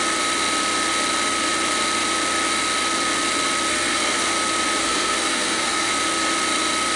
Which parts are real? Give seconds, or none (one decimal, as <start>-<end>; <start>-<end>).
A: 0.0-3.7; 4.3-4.8; 5.9-7.0